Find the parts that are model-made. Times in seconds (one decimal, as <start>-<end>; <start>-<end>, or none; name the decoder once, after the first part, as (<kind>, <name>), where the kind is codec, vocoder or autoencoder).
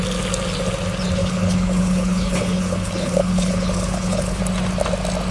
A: 1.2-4.4 (codec, HILCodec)